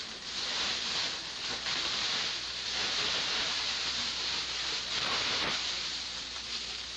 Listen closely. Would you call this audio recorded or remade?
remade